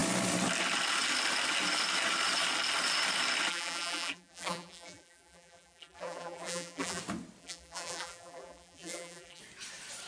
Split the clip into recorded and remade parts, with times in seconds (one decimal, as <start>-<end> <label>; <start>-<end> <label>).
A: 0.0-3.5 recorded; 3.5-7.0 remade; 7.0-7.4 recorded; 7.4-9.4 remade; 9.4-10.1 recorded